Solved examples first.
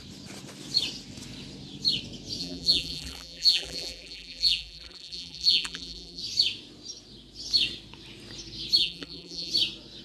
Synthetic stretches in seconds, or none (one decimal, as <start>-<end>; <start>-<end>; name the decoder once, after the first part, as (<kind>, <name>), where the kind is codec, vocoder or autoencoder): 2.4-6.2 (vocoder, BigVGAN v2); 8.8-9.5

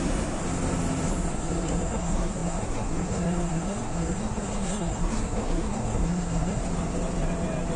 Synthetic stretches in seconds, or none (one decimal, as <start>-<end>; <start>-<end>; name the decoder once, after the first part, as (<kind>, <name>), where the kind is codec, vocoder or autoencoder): 0.0-0.4 (codec, SNAC); 1.3-6.6

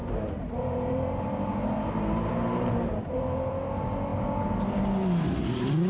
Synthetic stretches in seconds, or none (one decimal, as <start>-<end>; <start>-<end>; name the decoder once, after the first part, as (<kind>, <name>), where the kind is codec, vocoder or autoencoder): 0.0-3.5 (vocoder, BigVGAN v2)